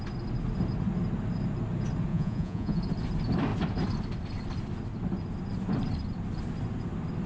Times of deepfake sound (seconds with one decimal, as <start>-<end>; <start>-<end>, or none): 2.1-2.8